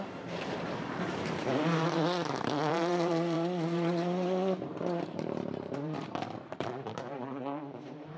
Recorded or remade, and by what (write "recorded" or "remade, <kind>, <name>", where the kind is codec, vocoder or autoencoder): remade, vocoder, BigVGAN v2